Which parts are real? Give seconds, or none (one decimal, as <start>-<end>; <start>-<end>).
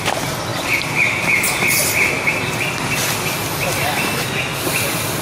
0.0-5.2